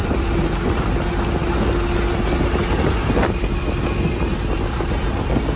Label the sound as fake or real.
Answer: real